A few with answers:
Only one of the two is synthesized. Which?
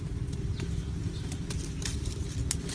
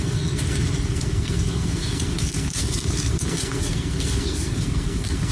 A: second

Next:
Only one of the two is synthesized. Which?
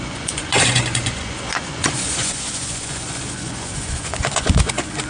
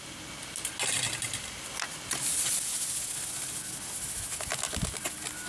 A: first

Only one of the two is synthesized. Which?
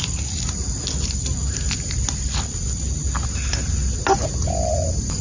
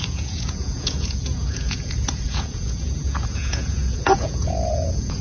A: second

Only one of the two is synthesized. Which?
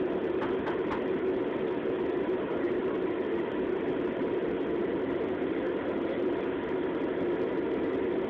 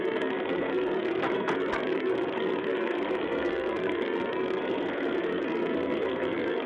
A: second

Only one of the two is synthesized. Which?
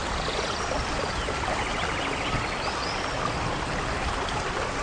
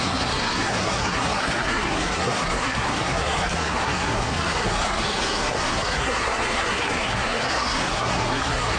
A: second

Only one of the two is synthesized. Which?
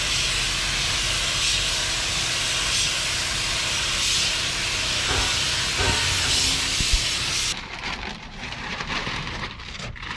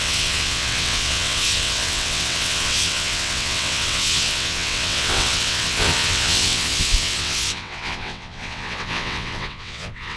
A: second